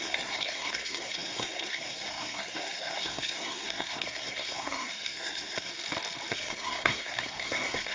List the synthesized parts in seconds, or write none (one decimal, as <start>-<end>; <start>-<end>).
0.0-5.7; 6.3-7.9